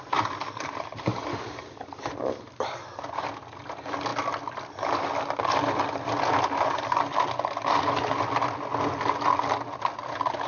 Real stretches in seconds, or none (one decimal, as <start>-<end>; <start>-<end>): 0.0-10.5